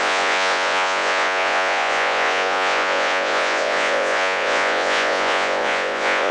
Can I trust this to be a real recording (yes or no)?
no